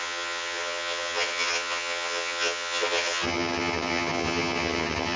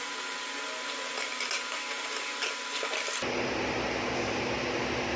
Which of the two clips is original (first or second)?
second